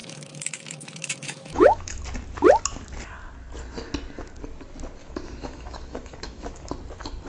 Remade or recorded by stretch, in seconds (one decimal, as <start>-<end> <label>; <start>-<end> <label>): 0.0-2.0 remade; 2.0-5.0 recorded; 5.0-6.7 remade; 6.7-7.3 recorded